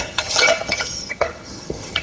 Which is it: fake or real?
fake